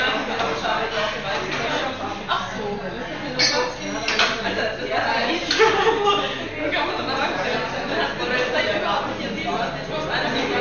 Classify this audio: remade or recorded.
recorded